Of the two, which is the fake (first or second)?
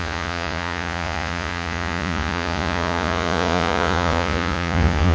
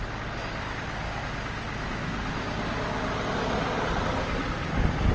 first